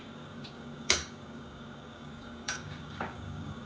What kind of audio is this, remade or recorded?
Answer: remade